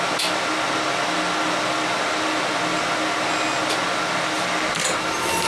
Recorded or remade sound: recorded